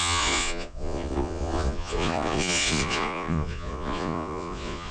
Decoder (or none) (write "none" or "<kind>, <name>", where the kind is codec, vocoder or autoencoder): vocoder, Vocos